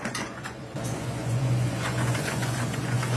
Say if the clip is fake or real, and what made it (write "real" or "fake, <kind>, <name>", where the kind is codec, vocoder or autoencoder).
fake, vocoder, Vocos